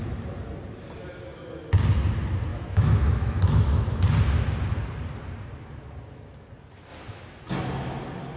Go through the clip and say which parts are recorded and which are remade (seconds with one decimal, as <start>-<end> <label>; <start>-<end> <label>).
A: 0.0-2.5 recorded; 2.5-4.0 remade; 4.0-8.4 recorded